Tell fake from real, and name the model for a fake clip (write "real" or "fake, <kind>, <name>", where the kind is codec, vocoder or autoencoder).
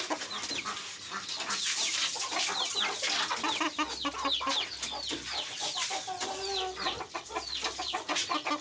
real